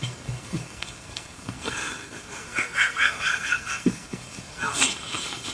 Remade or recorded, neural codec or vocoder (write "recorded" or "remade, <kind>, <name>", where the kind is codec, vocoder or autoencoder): remade, codec, SNAC